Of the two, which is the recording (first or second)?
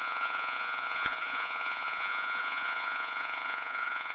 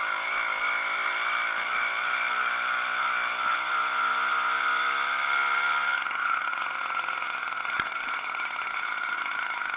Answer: second